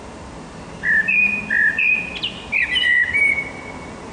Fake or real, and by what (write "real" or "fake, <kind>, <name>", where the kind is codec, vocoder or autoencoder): real